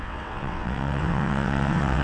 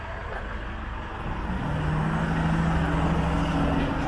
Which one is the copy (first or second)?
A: first